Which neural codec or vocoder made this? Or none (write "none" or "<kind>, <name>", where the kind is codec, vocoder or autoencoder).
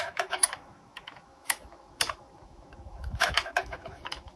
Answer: autoencoder, DAC-VAE